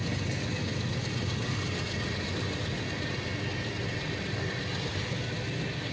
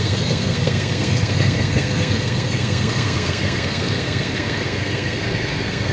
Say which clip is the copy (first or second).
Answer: second